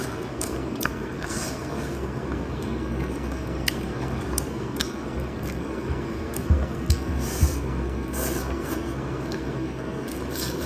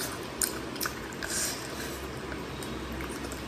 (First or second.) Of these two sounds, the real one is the second